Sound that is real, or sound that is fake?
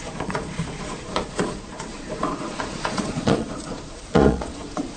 fake